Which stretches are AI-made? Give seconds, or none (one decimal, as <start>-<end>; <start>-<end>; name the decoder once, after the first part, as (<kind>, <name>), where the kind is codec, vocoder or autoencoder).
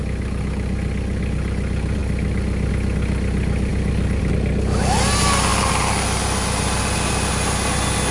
none